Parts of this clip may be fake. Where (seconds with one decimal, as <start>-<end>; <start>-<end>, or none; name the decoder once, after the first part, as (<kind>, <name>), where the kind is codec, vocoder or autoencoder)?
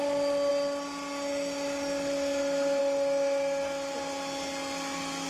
none